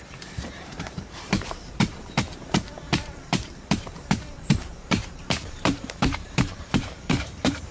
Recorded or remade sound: remade